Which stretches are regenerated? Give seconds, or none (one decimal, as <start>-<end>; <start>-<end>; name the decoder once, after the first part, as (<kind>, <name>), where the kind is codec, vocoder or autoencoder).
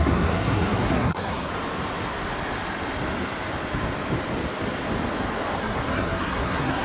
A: 0.0-1.5 (codec, SNAC); 5.6-6.8